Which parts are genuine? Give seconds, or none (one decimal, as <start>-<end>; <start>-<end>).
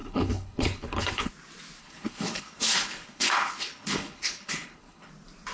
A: 1.3-1.8; 5.1-5.5